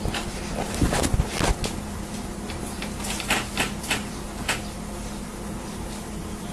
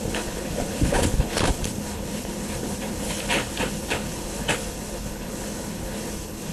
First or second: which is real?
first